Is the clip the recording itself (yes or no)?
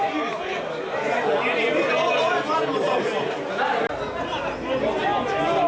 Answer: yes